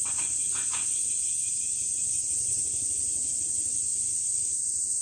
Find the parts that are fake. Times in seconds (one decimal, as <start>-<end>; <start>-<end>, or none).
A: none